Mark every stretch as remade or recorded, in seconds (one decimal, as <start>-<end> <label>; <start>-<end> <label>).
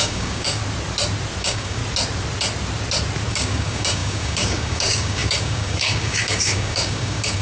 0.0-0.6 remade; 0.6-1.4 recorded; 1.4-1.8 remade; 1.8-3.3 recorded; 3.3-7.4 remade